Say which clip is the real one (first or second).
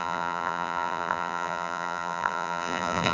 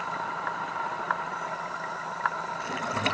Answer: second